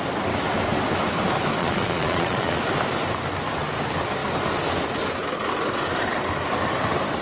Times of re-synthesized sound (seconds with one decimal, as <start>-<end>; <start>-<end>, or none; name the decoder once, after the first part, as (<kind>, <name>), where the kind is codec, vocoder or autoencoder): 1.6-2.6 (vocoder, Vocos)